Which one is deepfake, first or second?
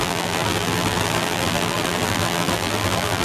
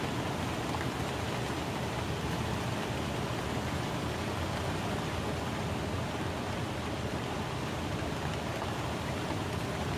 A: first